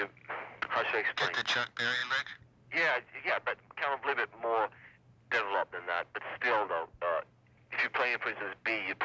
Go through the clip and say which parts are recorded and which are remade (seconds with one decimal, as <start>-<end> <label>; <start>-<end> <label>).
0.0-9.0 recorded